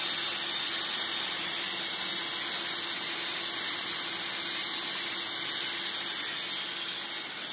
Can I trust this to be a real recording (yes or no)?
yes